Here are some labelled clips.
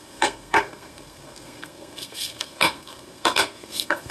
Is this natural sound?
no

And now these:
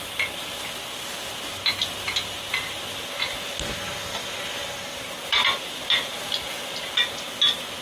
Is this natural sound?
yes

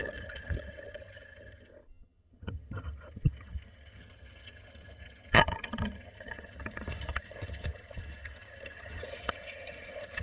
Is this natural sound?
no